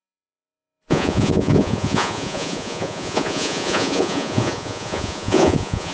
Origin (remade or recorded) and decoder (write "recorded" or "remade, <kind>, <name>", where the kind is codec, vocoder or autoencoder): remade, vocoder, Vocos